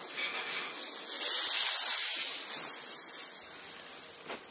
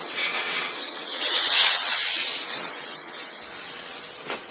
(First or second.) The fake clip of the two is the second